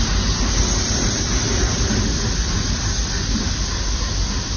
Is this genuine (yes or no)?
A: yes